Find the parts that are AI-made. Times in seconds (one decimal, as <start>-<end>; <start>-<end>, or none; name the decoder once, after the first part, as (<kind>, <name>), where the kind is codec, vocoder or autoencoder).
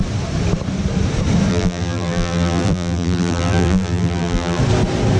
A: 1.5-4.6 (vocoder, BigVGAN v2)